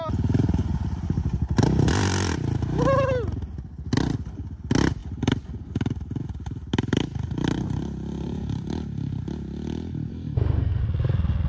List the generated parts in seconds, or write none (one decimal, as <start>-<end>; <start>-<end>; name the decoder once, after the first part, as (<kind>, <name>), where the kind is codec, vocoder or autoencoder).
10.1-10.8 (codec, SNAC)